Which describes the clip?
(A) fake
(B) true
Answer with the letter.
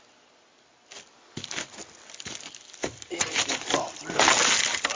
B